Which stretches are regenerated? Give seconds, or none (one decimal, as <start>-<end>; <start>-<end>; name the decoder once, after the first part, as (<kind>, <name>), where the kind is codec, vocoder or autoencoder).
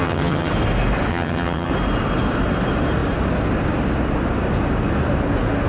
0.0-0.5 (vocoder, HiFi-GAN); 1.1-1.7